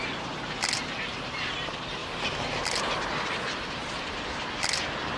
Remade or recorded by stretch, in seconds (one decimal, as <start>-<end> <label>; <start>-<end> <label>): 0.0-2.0 recorded; 2.0-2.8 remade; 2.8-3.8 recorded; 3.8-4.5 remade; 4.5-5.2 recorded